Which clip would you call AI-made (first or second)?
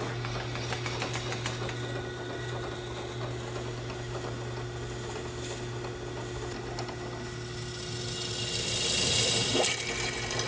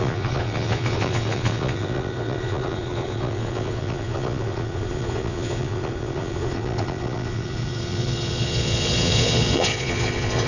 second